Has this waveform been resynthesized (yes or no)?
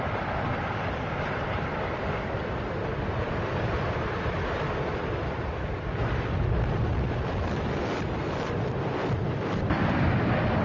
yes